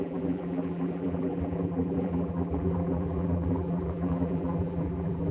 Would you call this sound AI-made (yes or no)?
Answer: yes